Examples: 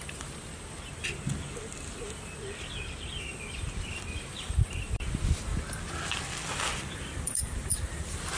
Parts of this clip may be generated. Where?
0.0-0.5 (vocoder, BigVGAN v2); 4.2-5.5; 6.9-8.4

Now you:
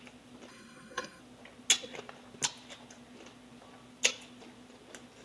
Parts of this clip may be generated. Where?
0.5-1.2 (codec, SNAC)

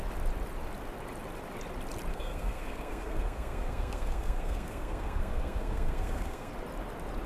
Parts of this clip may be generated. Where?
2.1-6.5 (codec, SNAC)

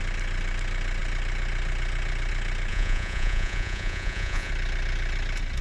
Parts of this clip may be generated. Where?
2.7-4.5 (vocoder, Vocos)

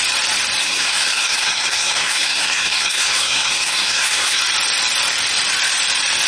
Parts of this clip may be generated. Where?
0.6-4.4 (codec, SNAC)

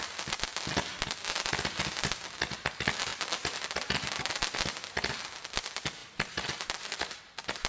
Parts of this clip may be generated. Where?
3.1-4.3 (vocoder, BigVGAN v2); 6.0-7.2

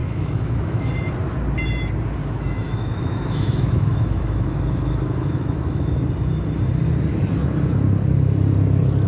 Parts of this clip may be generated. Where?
0.0-0.9 (autoencoder, DAC-VAE); 2.2-6.0

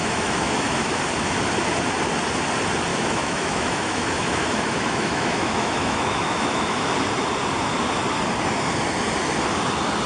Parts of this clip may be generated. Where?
0.0-1.0 (autoencoder, DAC-VAE); 2.9-6.9